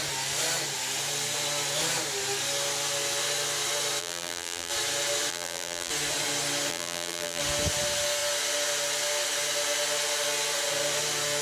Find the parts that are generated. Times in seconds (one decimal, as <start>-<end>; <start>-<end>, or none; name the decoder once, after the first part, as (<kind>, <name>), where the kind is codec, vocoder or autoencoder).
4.0-4.7 (vocoder, BigVGAN v2); 5.3-5.9; 6.7-7.4